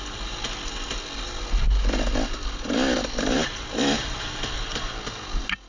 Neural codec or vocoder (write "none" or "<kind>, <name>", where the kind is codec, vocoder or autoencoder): none